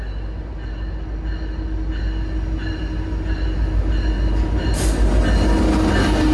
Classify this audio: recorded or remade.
recorded